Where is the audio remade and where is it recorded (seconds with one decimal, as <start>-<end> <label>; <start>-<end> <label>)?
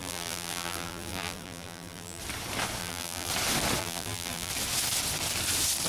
0.0-2.2 remade; 2.2-2.8 recorded; 2.8-3.3 remade; 3.3-3.8 recorded; 3.8-4.5 remade; 4.5-5.9 recorded